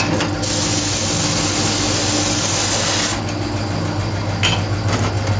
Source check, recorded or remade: recorded